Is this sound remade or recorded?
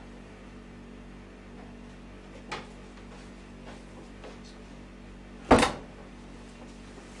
recorded